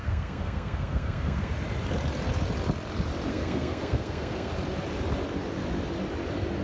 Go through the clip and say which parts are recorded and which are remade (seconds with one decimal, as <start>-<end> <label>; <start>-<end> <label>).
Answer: 0.0-1.5 remade; 1.5-3.3 recorded; 3.3-4.5 remade; 4.5-6.6 recorded